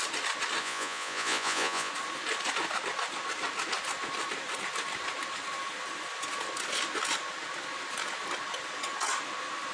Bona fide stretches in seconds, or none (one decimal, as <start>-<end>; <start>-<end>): 0.0-0.6; 1.9-9.7